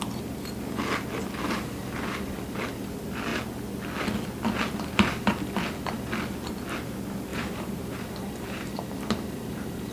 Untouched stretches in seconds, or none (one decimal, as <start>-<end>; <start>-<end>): 0.0-7.3